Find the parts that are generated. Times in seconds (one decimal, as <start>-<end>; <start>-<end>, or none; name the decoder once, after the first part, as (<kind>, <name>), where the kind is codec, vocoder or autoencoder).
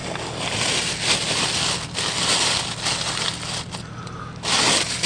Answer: none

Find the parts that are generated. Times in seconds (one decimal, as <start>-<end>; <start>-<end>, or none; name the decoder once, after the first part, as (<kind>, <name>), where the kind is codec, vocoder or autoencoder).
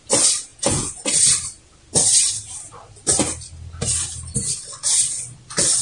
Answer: 0.5-1.0 (vocoder, Vocos)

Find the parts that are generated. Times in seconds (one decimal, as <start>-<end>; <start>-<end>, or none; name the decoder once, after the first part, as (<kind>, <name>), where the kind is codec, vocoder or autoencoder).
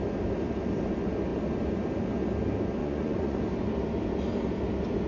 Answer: 2.8-3.4 (vocoder, Vocos)